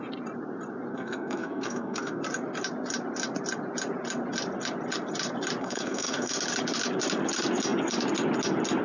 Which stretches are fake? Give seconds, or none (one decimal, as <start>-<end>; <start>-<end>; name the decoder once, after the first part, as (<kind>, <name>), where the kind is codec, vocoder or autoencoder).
0.9-2.2 (codec, SNAC); 5.6-6.3